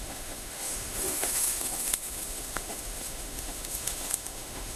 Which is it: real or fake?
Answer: fake